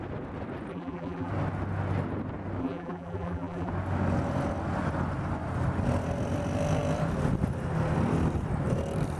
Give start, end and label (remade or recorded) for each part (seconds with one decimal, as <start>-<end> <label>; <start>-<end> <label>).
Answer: 0.0-0.7 recorded; 0.7-1.3 remade; 1.3-2.6 recorded; 2.6-3.7 remade; 3.7-9.2 recorded